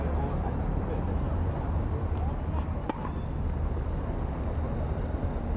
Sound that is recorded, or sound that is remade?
recorded